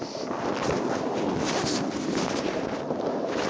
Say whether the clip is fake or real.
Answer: real